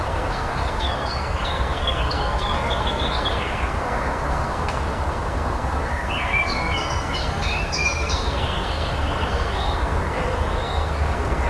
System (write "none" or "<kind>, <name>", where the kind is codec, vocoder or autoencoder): codec, SNAC